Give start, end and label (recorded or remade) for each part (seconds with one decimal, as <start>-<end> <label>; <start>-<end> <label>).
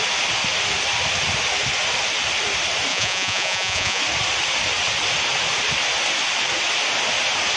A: 0.0-2.9 recorded; 2.9-4.0 remade; 4.0-7.6 recorded